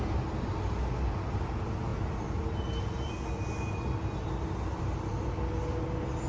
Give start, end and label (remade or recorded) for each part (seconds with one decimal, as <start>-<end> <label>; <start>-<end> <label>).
0.0-6.3 recorded